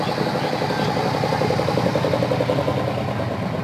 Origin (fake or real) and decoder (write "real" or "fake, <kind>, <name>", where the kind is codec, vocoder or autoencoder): real